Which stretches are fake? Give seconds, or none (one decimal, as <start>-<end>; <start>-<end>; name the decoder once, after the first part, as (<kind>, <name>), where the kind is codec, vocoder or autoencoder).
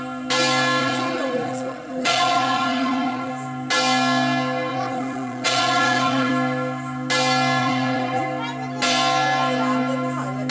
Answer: 0.8-3.3 (vocoder, Vocos); 4.7-6.3; 7.6-8.2